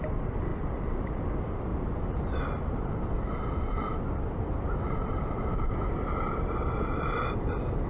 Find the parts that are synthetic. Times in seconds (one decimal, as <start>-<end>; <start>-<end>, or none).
0.5-1.2; 1.7-6.4